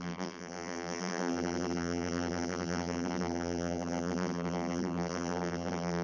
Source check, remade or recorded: remade